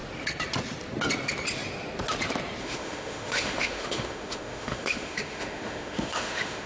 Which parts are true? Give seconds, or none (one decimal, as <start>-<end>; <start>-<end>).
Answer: 0.0-2.6